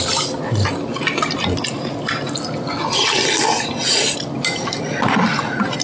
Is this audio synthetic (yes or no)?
no